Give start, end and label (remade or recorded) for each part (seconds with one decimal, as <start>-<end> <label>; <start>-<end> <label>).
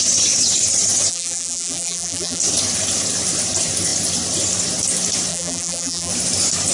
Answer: 0.0-1.1 recorded; 1.1-2.4 remade; 2.4-5.3 recorded; 5.3-6.1 remade; 6.1-6.7 recorded